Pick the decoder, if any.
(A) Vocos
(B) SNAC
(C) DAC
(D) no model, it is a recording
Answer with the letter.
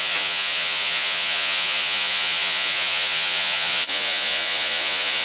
A